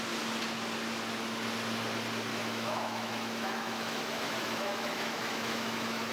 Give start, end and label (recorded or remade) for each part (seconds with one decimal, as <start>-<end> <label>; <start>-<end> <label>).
0.0-2.3 recorded; 2.3-6.1 remade